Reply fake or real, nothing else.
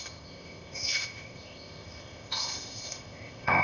fake